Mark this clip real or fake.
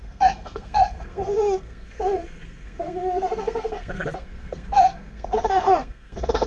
fake